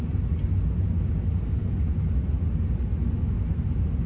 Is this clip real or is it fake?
real